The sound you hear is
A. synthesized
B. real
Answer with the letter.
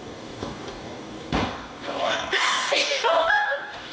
A